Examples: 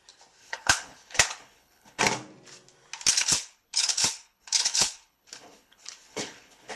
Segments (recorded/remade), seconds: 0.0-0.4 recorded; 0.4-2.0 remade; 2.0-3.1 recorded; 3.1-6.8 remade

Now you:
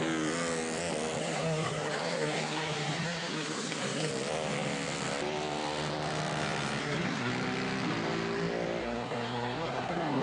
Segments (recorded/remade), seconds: 0.0-1.2 recorded; 1.2-4.1 remade; 4.1-6.8 recorded; 6.8-7.3 remade; 7.3-8.8 recorded; 8.8-10.2 remade

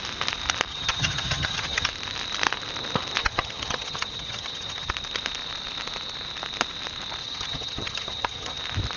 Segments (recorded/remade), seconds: 0.0-0.7 recorded; 0.7-1.9 remade; 1.9-3.2 recorded; 3.2-4.9 remade; 4.9-7.2 recorded; 7.2-8.6 remade; 8.6-9.0 recorded